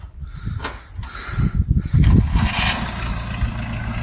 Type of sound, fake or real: real